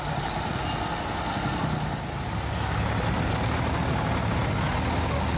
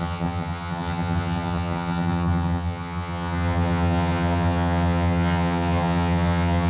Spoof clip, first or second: second